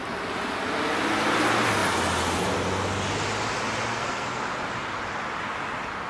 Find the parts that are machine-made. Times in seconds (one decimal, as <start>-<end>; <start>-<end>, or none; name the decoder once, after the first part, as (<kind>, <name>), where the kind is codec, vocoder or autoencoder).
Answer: 3.9-4.4 (codec, SNAC)